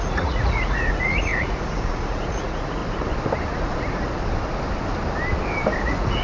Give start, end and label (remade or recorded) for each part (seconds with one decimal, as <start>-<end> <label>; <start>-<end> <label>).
0.0-2.8 remade; 2.8-5.8 recorded; 5.8-6.2 remade